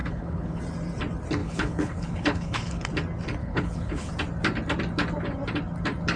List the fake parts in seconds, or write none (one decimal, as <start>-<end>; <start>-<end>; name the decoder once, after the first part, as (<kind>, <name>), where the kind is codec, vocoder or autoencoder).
0.0-0.6 (codec, HILCodec); 1.4-2.9; 3.4-4.1